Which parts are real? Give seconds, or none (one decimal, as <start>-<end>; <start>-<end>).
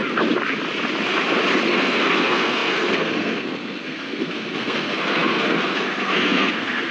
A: 0.0-1.7